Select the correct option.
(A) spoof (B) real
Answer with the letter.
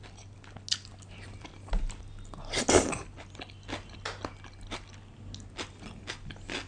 B